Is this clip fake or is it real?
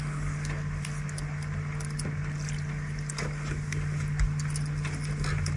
real